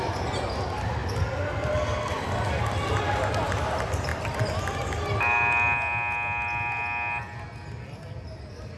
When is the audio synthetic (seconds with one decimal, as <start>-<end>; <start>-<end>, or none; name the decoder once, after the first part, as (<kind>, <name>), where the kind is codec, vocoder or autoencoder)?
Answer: none